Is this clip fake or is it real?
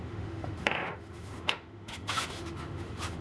fake